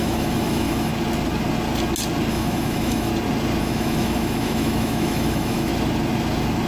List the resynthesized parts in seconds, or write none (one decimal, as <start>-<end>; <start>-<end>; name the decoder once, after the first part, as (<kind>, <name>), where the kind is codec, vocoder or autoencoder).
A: 0.0-0.9 (autoencoder, DAC-VAE); 2.3-3.1; 3.6-5.7